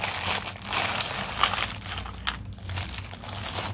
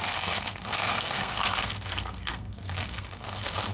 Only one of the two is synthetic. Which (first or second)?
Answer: second